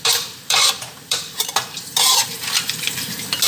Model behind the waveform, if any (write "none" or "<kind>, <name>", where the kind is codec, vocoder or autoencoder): vocoder, BigVGAN v2